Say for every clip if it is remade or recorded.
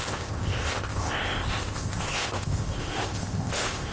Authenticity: remade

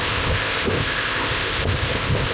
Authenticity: remade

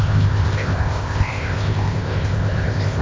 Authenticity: remade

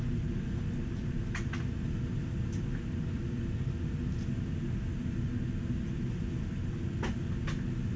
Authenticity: recorded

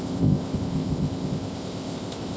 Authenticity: remade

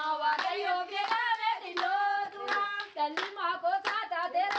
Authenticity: recorded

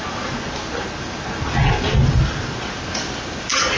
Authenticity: recorded